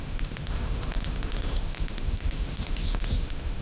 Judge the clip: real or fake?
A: fake